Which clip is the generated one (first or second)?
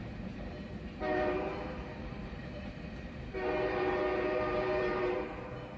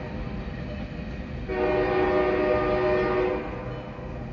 first